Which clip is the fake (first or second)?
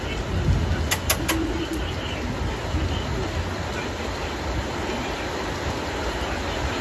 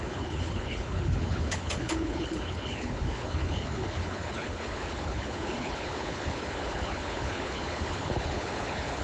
second